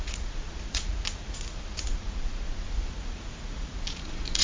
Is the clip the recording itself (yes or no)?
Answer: no